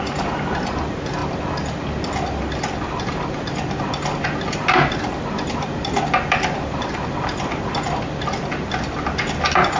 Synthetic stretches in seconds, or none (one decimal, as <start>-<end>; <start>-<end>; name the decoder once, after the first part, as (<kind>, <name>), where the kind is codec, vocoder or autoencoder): none